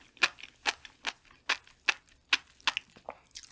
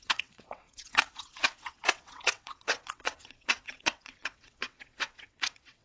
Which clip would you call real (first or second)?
first